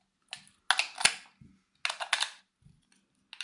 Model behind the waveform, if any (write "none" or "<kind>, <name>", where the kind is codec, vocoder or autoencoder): none